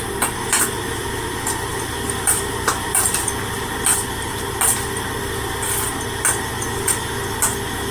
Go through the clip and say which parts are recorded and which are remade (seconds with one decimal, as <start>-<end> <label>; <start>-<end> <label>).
0.0-1.7 recorded; 1.7-3.4 remade; 3.4-7.9 recorded